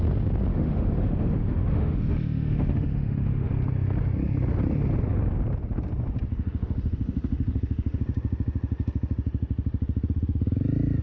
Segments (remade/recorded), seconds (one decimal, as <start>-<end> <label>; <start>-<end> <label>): 0.0-0.5 recorded; 0.5-3.5 remade; 3.5-6.3 recorded; 6.3-8.0 remade; 8.0-11.0 recorded